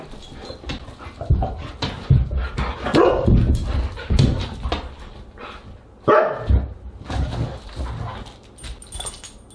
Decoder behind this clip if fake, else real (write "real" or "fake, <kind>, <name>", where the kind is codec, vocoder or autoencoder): real